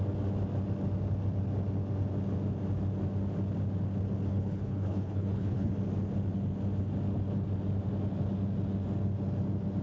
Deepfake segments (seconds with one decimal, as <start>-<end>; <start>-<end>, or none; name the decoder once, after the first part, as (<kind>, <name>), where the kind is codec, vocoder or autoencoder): 4.3-5.7 (codec, HILCodec)